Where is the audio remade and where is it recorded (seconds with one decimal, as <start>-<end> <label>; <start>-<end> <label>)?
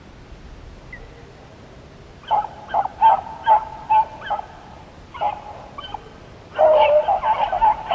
0.0-7.9 recorded